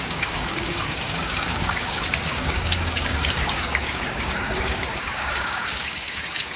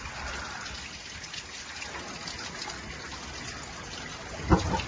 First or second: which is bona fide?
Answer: second